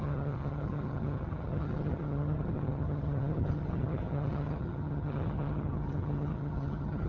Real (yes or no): no